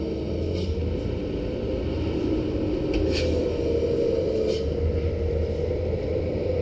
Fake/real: real